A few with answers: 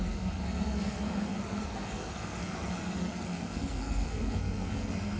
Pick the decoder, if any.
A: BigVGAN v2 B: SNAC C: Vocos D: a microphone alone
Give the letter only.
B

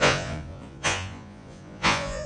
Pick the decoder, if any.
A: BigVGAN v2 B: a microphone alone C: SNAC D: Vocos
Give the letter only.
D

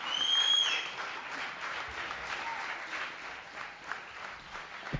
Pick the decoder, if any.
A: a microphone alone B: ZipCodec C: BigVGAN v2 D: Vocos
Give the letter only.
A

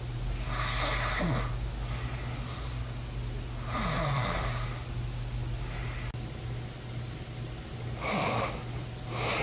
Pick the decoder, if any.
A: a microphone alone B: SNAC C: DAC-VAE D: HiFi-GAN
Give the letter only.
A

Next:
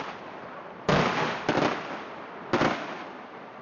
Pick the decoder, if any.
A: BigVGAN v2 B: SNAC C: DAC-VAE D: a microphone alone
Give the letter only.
D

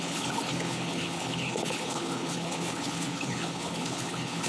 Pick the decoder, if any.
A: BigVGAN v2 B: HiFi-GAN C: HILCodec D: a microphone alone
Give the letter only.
C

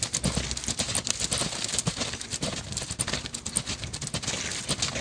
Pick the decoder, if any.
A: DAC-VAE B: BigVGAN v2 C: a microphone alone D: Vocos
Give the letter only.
C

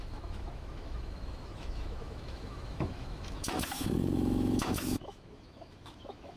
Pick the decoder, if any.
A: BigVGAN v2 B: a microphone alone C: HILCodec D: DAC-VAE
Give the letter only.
D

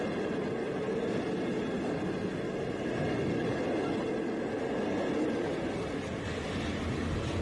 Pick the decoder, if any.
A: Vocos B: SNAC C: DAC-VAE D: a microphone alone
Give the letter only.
D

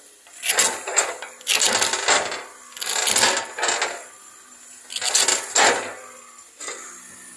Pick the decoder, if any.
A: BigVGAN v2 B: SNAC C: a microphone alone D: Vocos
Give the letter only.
C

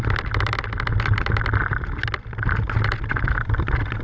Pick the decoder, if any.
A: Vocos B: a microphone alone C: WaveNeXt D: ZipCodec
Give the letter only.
B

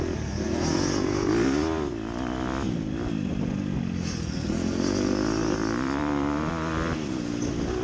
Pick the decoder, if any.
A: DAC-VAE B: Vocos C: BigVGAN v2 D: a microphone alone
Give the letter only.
D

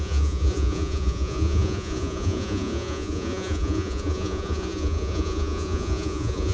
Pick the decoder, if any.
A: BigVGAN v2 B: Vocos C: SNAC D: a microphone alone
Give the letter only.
B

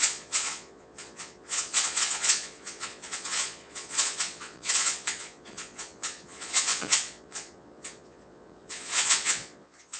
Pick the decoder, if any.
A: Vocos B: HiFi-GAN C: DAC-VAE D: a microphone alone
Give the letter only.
A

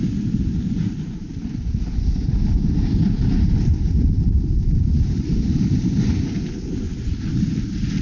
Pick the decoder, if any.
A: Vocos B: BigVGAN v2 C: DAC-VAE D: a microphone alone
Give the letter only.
B